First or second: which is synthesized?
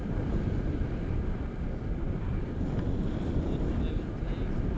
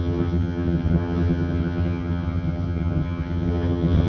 second